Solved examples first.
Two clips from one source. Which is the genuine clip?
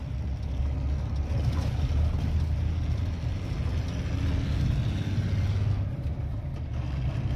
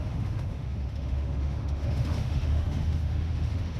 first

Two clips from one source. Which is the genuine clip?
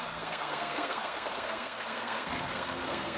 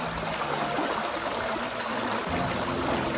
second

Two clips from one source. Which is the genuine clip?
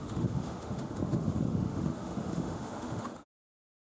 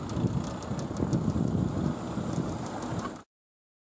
second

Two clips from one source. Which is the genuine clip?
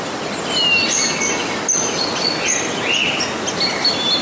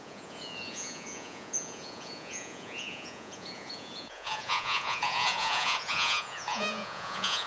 first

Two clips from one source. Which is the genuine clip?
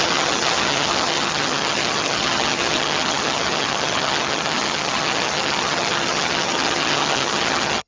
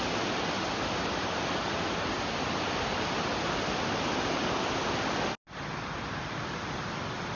second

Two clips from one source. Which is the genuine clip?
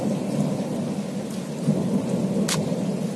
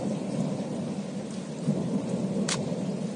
first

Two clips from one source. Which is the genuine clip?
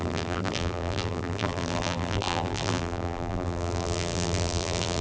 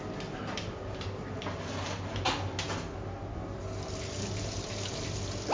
second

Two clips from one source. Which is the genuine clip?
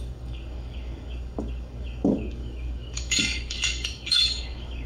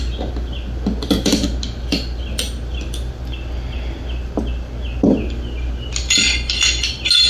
second